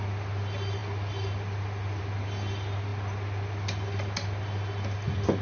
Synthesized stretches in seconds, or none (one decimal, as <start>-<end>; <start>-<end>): none